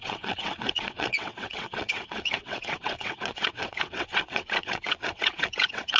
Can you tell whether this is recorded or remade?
remade